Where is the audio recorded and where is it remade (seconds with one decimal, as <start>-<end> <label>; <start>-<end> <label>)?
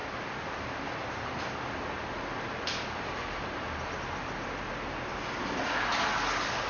0.0-6.7 recorded